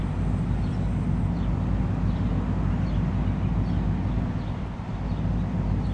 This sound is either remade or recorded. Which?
recorded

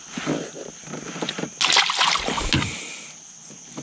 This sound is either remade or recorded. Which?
recorded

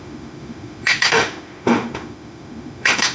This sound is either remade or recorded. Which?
remade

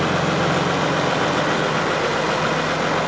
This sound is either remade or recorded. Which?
recorded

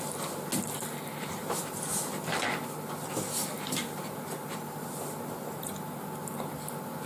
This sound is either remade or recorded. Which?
recorded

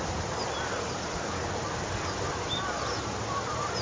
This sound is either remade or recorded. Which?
recorded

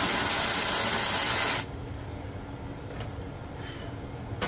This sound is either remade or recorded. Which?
recorded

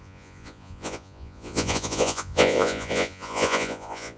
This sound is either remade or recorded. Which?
remade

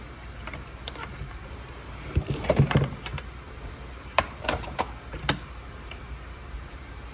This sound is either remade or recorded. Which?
remade